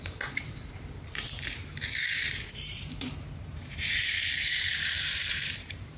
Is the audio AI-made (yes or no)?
yes